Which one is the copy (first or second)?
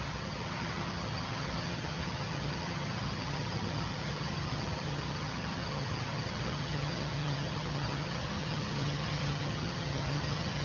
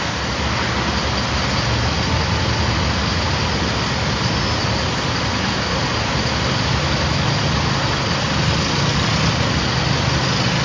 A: first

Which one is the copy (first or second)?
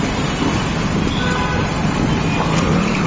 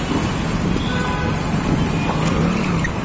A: first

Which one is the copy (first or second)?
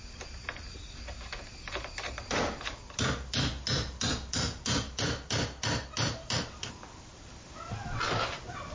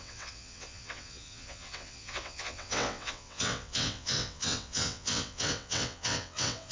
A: second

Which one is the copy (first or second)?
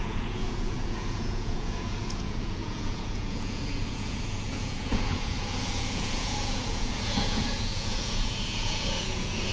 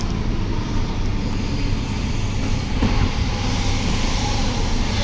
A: first